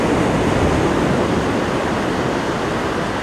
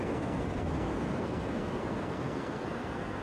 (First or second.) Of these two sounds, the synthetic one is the second